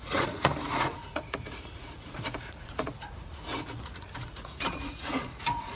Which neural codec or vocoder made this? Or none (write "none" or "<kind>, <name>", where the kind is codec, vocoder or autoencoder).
vocoder, Vocos